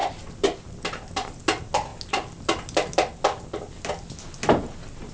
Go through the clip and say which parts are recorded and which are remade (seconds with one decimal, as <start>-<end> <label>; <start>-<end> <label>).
0.0-5.1 recorded